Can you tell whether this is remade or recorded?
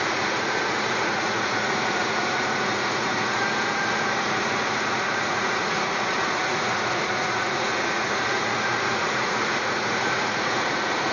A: remade